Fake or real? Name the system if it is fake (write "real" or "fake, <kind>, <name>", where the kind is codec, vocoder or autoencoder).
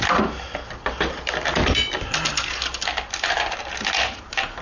real